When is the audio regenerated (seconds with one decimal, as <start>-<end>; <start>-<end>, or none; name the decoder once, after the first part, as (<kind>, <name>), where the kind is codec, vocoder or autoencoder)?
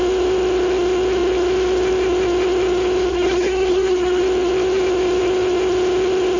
3.1-4.2 (codec, SNAC)